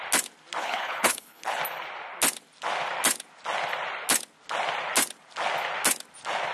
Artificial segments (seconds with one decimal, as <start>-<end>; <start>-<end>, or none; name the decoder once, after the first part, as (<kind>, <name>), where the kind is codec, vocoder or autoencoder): 0.6-1.6 (codec, HILCodec)